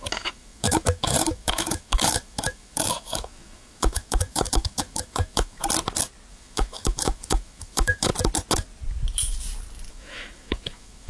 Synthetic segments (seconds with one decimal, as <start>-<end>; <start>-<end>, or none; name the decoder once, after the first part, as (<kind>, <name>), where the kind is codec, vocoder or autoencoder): 0.0-5.6 (autoencoder, DAC-VAE); 6.3-8.1; 9.9-11.1